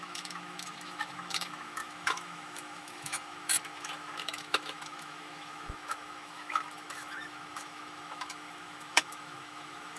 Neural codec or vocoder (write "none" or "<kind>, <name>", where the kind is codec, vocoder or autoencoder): autoencoder, DAC-VAE